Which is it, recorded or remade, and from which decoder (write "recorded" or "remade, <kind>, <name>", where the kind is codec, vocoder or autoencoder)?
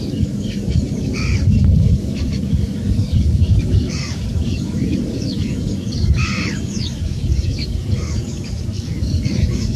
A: remade, codec, DAC